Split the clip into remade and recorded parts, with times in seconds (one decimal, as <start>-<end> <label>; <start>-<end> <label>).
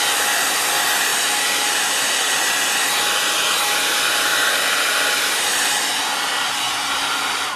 0.0-7.6 recorded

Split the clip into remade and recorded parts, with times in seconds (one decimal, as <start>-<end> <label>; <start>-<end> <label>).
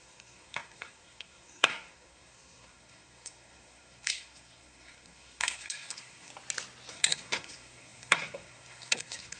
0.0-6.3 remade; 6.3-6.9 recorded; 6.9-9.4 remade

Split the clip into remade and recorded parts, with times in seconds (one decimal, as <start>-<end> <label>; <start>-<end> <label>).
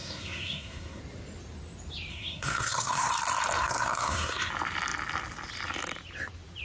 0.0-1.0 remade; 1.0-2.1 recorded; 2.1-3.1 remade; 3.1-3.6 recorded; 3.6-4.5 remade; 4.5-6.6 recorded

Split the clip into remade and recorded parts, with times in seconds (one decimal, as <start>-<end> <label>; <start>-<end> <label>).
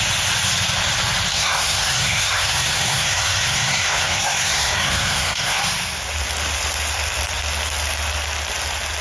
0.0-1.3 recorded; 1.3-5.6 remade; 5.6-9.0 recorded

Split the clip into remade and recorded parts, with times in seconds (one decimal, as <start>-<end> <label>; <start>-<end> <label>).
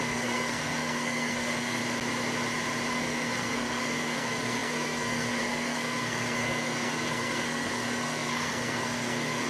0.0-1.8 remade; 1.8-2.9 recorded; 2.9-9.5 remade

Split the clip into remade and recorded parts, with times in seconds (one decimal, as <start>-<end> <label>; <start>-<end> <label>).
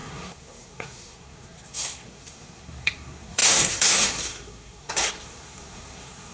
0.0-6.3 remade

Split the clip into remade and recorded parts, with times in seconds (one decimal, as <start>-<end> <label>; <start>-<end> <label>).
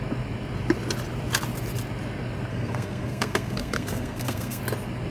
0.0-2.5 recorded; 2.5-4.6 remade; 4.6-5.1 recorded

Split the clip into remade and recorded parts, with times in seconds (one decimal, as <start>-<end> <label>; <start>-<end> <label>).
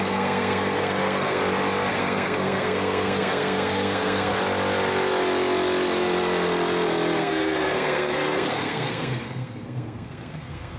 0.0-1.4 remade; 1.4-1.9 recorded; 1.9-4.3 remade; 4.3-7.2 recorded; 7.2-10.8 remade